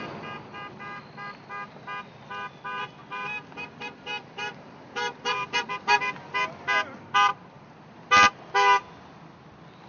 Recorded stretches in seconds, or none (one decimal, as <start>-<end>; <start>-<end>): 0.0-3.0; 5.7-9.9

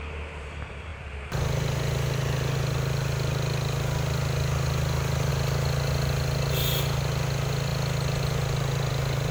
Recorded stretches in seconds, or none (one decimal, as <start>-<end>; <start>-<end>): 0.0-9.3